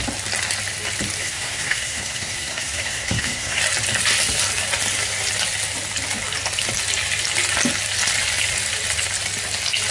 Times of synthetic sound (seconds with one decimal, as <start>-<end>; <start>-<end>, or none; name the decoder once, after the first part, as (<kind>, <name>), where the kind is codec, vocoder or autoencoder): 1.2-3.6 (codec, SNAC)